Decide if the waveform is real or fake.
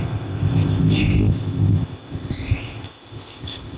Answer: fake